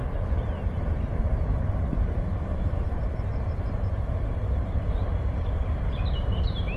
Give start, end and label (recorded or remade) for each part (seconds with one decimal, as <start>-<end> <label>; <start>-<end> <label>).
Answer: 0.0-1.7 recorded; 1.7-6.8 remade